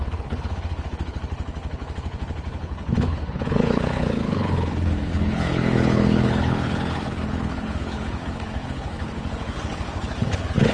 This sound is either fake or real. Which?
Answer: fake